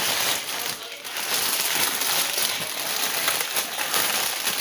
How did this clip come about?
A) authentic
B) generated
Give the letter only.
B